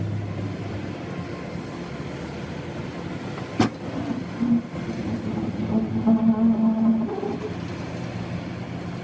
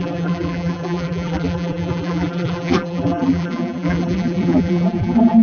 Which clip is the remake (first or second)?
second